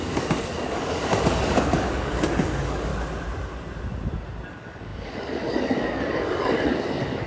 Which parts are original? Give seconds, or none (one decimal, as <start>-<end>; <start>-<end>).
2.9-4.5

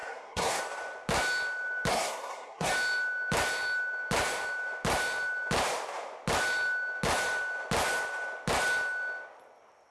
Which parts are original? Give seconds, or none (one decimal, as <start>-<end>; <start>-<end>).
0.6-1.9; 2.7-9.9

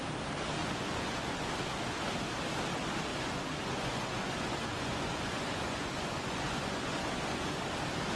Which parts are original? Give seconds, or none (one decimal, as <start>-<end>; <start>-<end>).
0.0-0.6; 1.5-3.1; 7.6-8.2

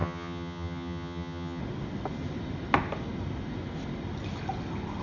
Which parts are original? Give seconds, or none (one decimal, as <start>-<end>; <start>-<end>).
1.6-5.0

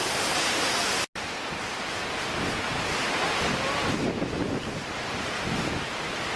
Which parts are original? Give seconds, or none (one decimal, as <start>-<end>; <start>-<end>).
0.0-6.4